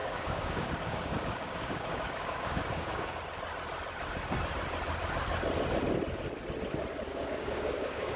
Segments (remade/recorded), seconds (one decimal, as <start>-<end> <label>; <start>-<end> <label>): 0.0-3.2 remade; 3.2-7.1 recorded; 7.1-8.2 remade